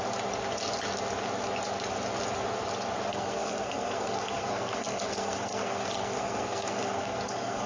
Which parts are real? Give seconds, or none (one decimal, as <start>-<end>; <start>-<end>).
0.0-3.1